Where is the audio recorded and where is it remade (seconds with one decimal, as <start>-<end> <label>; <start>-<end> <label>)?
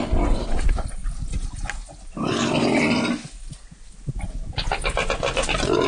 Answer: 0.0-5.9 recorded